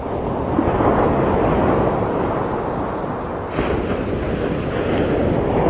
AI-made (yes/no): no